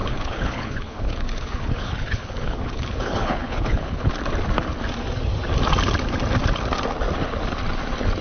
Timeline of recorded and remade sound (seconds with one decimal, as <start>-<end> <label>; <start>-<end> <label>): 0.0-4.1 remade; 4.1-8.2 recorded